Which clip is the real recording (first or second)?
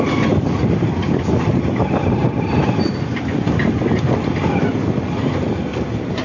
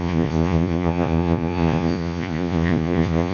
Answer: first